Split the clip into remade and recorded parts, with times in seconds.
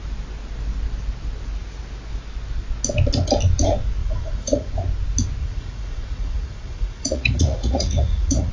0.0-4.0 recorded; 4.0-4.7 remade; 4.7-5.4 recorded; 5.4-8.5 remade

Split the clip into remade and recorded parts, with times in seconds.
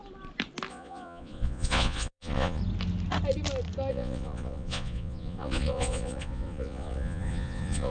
0.0-0.7 recorded; 0.7-2.6 remade; 2.6-3.9 recorded; 3.9-7.9 remade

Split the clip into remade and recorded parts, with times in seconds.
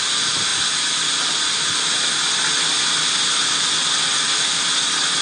0.0-5.2 recorded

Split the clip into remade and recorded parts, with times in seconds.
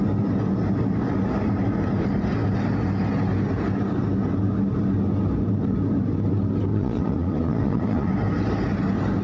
0.0-6.7 recorded; 6.7-8.1 remade; 8.1-9.2 recorded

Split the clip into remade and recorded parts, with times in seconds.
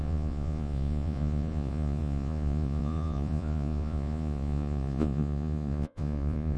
0.0-6.6 remade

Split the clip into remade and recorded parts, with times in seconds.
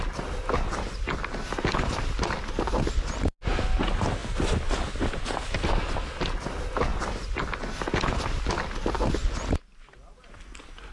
0.0-10.9 recorded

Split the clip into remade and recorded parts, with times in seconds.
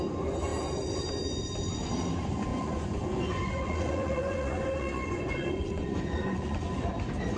0.0-2.5 recorded; 2.5-6.9 remade; 6.9-7.4 recorded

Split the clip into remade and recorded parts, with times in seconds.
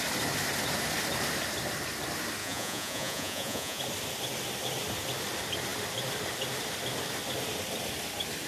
0.0-2.4 recorded; 2.4-3.8 remade; 3.8-8.5 recorded